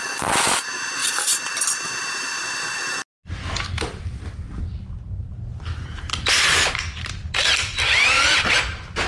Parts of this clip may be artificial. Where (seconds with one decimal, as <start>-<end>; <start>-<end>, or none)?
none